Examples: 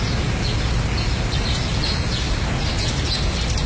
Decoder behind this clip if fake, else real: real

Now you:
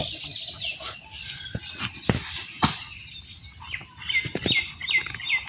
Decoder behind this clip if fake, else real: real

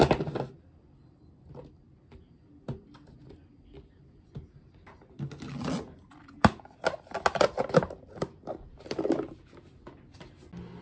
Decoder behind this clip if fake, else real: real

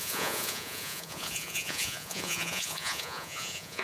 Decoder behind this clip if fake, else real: fake, vocoder, Vocos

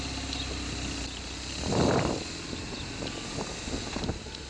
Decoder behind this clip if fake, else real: real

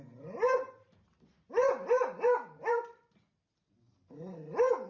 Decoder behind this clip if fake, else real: real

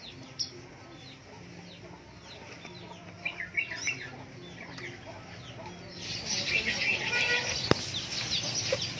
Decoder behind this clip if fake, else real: real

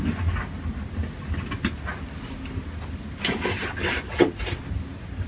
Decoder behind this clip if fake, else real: real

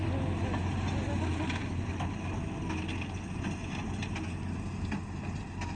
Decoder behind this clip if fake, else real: real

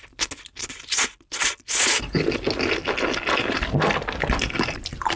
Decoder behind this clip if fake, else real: real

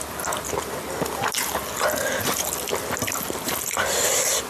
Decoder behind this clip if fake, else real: real